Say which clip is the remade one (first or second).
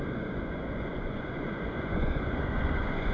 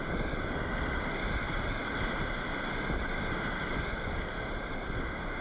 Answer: first